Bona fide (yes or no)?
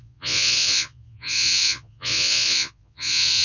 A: no